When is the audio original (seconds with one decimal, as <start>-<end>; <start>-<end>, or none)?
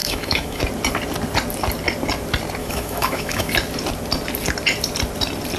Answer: 0.6-2.6; 3.5-5.6